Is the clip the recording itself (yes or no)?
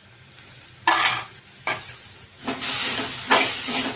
yes